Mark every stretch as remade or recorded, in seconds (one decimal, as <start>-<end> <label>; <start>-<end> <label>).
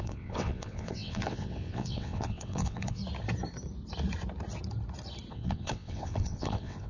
0.0-3.0 remade; 3.0-5.3 recorded; 5.3-6.9 remade